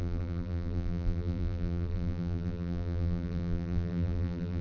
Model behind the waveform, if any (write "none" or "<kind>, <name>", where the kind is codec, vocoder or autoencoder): vocoder, BigVGAN v2